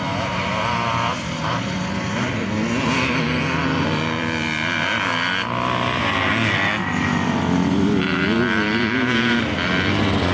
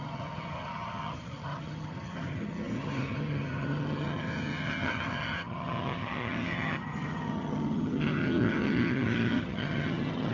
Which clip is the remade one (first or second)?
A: second